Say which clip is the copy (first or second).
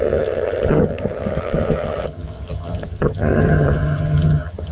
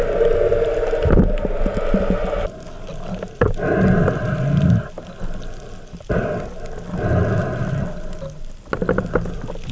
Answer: first